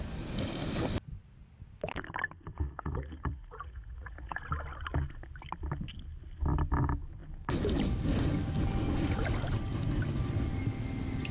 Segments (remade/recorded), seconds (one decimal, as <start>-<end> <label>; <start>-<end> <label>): 0.0-2.5 recorded; 2.5-4.4 remade; 4.4-11.3 recorded